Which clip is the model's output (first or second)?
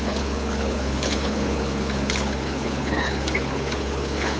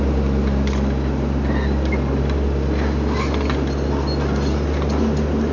first